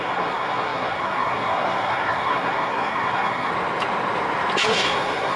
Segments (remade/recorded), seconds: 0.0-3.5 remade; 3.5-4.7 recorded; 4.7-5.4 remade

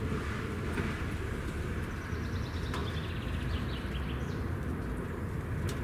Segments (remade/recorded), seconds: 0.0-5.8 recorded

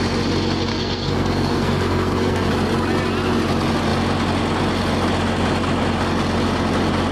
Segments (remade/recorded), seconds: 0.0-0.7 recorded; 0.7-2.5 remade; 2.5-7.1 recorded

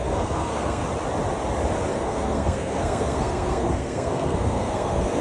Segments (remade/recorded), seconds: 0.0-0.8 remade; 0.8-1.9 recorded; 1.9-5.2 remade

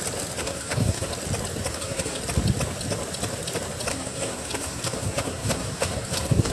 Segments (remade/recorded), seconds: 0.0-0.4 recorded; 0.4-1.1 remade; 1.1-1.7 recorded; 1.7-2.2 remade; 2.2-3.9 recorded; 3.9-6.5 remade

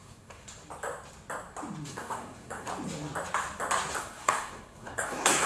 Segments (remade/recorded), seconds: 0.0-0.5 remade; 0.5-1.9 recorded; 1.9-2.7 remade; 2.7-4.0 recorded; 4.0-5.5 remade

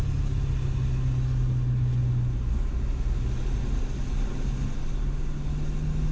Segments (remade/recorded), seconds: 0.0-6.1 recorded